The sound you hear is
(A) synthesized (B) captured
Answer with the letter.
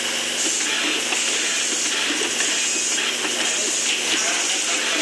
B